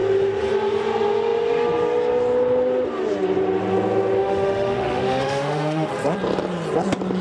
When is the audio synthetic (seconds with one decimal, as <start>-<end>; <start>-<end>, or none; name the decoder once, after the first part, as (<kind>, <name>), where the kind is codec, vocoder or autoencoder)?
4.2-5.9 (autoencoder, DAC-VAE)